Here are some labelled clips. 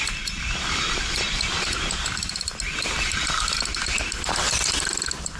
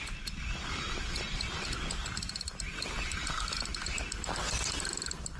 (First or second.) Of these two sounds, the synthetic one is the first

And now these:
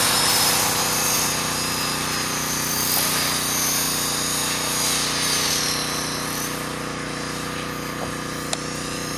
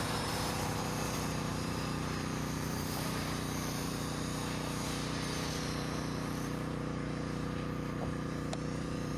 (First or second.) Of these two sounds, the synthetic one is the second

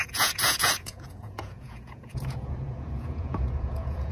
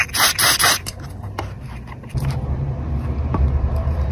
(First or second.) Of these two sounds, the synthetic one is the first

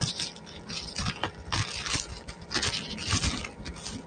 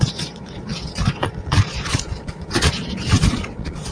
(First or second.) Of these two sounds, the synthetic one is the second